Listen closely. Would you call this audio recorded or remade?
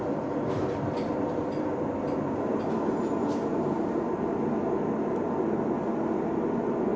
recorded